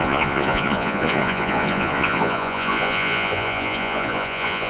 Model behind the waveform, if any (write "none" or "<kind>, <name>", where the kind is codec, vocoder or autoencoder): vocoder, Vocos